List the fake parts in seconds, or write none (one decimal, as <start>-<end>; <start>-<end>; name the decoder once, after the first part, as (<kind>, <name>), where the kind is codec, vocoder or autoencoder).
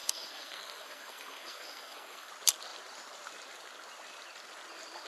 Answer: 0.0-2.3 (codec, SNAC)